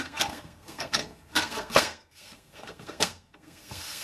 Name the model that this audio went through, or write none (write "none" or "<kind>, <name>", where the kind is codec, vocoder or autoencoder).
codec, SNAC